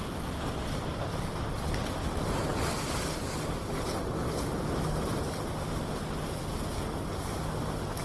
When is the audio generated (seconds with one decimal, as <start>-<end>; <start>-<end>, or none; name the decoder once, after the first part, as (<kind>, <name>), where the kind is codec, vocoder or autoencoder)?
none